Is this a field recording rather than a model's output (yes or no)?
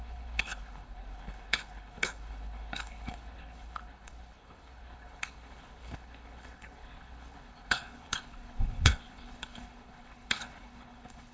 no